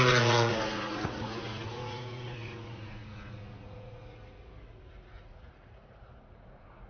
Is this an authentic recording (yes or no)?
no